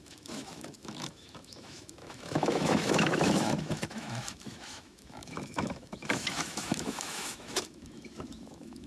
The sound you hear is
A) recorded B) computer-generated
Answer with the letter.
B